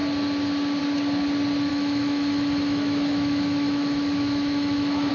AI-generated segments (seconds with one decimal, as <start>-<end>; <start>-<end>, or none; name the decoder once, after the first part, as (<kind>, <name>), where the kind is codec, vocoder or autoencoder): 1.7-5.1 (autoencoder, DAC-VAE)